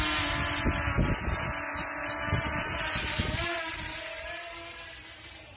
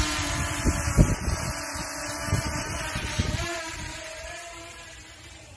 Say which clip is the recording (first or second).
first